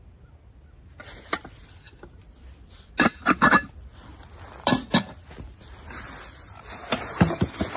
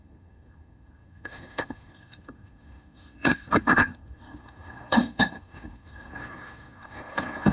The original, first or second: first